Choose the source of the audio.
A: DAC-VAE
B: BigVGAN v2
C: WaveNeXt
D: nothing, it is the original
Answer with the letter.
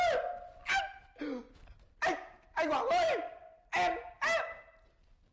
D